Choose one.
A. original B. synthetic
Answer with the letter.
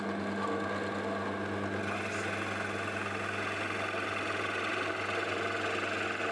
A